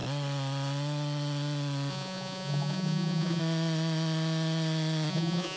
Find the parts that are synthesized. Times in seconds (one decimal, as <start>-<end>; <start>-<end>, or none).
1.9-3.4; 5.1-5.6